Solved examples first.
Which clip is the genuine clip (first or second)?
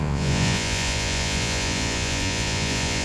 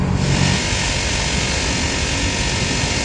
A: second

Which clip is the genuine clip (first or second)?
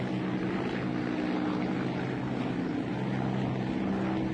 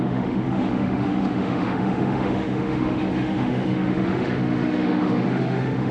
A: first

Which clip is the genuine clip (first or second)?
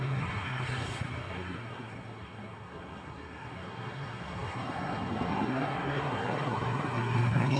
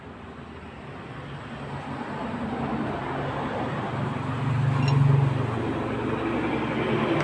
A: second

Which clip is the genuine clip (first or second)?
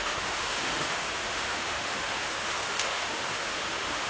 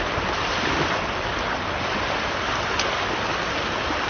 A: second